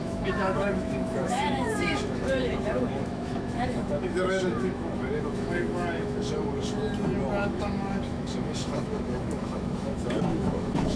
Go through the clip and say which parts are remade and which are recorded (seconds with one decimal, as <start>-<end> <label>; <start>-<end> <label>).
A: 0.0-6.8 remade; 6.8-7.4 recorded; 7.4-11.0 remade